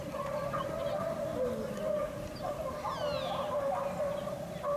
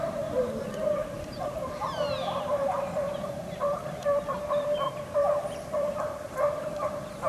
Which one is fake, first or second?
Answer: second